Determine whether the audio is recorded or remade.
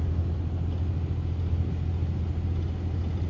recorded